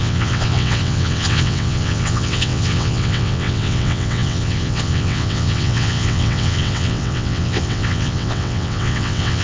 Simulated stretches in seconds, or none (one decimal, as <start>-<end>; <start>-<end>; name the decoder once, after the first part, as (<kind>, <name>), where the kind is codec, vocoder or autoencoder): 0.0-9.4 (vocoder, WaveNeXt)